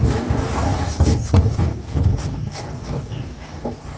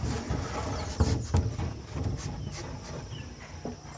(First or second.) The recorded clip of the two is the second